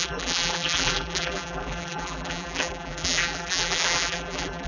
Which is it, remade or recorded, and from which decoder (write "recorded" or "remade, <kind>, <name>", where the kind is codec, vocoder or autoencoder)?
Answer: remade, vocoder, BigVGAN v2